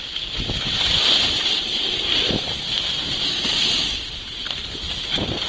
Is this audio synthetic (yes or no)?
no